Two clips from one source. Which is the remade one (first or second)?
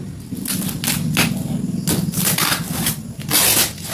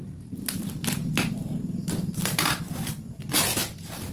second